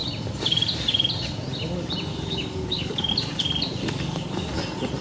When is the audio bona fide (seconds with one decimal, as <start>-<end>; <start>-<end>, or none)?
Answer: 0.0-2.1; 3.1-3.8; 4.6-5.0